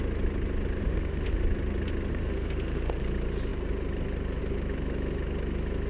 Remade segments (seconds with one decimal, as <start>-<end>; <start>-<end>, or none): 0.8-1.4; 2.1-3.0